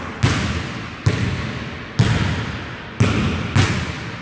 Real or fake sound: real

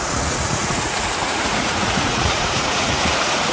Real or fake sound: fake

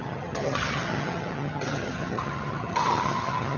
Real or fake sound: fake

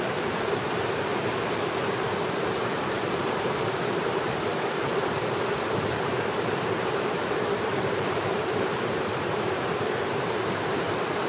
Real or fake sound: fake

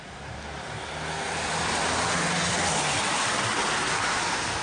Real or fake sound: real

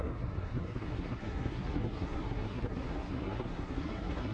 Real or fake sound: fake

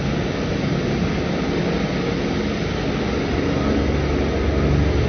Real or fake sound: real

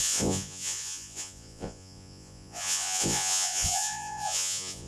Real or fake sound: fake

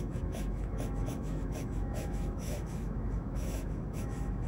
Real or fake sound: fake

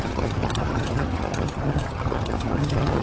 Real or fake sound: fake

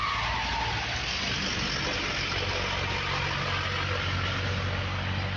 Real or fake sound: real